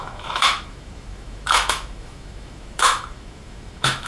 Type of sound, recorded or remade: remade